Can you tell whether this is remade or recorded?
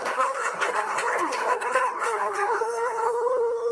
remade